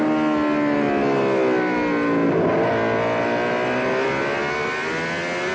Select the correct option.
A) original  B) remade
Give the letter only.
A